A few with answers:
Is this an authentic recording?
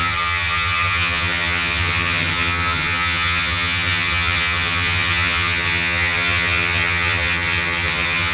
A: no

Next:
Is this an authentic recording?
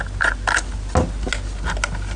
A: yes